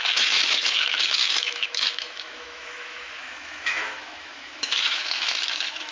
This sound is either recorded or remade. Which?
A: remade